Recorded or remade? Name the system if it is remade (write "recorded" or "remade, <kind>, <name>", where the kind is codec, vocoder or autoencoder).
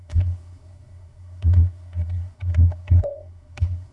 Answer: remade, codec, SNAC